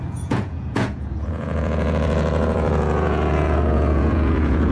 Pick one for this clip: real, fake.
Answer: fake